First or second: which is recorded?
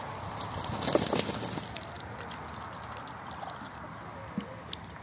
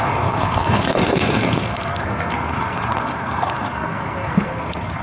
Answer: first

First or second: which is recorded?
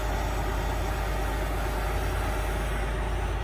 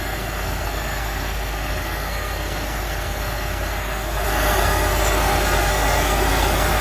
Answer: first